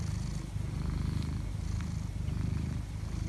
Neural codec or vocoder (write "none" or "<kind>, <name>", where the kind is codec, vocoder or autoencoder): none